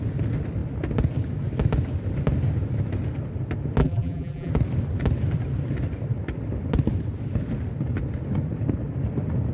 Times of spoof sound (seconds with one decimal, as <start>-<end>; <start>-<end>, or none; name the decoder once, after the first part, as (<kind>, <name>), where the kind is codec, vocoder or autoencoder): 3.8-4.5 (vocoder, BigVGAN v2)